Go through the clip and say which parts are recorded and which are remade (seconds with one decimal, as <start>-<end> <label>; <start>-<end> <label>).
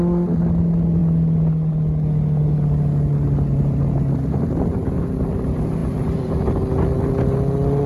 0.0-7.9 recorded